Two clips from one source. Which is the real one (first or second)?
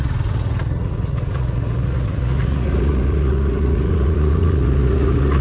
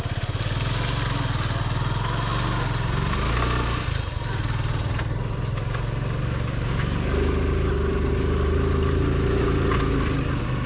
second